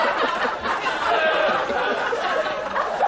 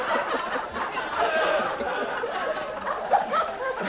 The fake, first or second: second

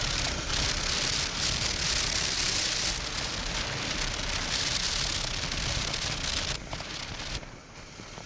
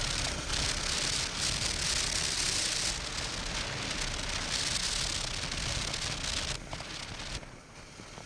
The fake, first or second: first